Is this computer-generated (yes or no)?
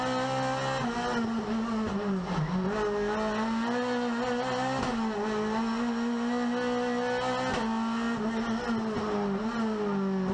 no